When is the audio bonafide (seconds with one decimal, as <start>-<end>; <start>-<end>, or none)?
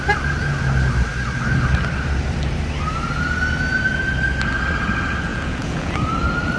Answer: 0.0-5.3; 5.9-6.6